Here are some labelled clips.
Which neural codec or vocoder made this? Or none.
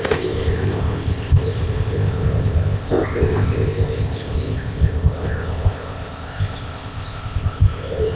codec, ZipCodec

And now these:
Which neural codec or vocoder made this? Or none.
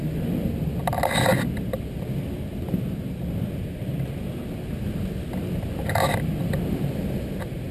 none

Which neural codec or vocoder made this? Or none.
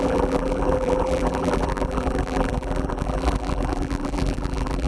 vocoder, BigVGAN v2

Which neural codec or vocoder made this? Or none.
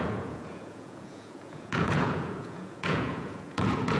vocoder, Vocos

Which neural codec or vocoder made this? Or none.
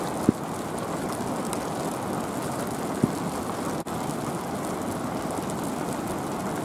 none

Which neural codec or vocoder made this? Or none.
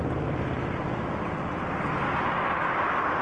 none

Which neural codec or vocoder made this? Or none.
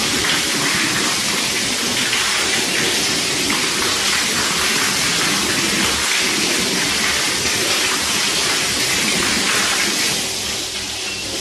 none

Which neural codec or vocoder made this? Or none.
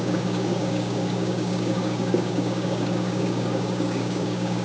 codec, DAC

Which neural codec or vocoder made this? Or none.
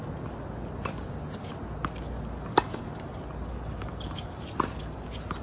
none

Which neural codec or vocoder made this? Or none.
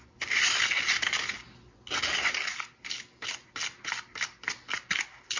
none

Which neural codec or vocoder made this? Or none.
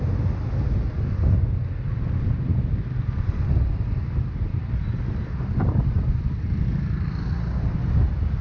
none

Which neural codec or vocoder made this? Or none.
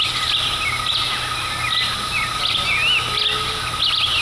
none